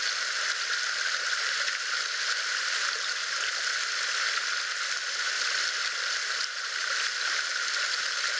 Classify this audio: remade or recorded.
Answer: recorded